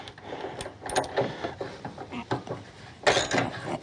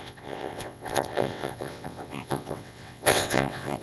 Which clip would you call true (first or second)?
first